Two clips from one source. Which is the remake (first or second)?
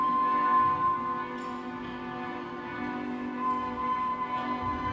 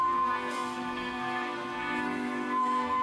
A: second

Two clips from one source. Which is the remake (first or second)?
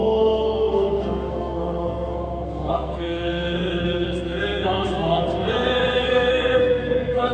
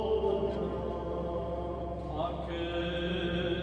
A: first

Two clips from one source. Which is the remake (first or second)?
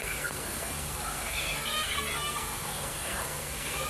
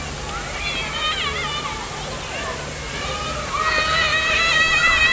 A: first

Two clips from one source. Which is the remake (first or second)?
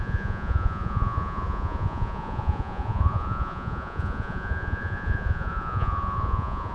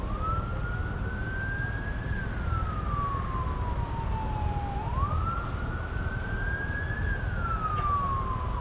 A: first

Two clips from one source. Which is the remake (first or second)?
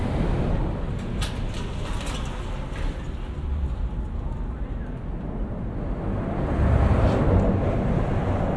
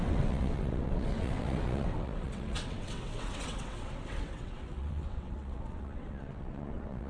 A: second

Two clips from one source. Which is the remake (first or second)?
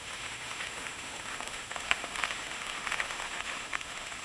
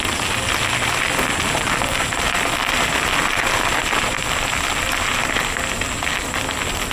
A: first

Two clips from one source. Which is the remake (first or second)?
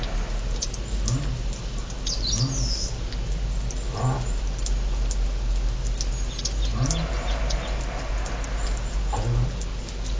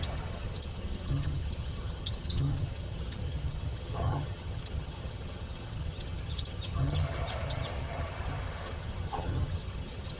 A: second